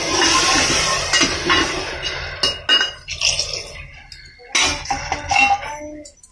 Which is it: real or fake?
real